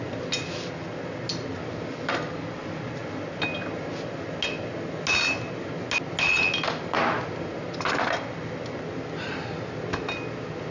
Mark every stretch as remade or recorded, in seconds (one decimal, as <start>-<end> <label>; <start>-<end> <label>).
0.0-10.7 recorded